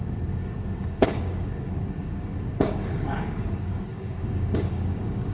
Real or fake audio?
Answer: fake